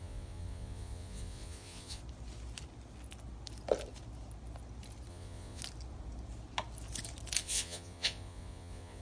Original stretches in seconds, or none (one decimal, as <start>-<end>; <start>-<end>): 2.0-5.1; 5.6-7.4